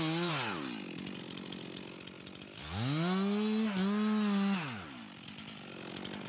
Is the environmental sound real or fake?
real